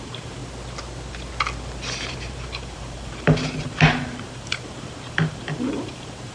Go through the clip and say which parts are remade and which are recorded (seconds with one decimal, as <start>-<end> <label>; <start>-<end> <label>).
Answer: 0.0-0.4 remade; 0.4-2.1 recorded; 2.1-6.3 remade